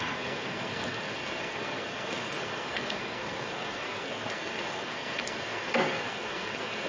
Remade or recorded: remade